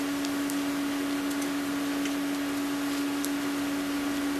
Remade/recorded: recorded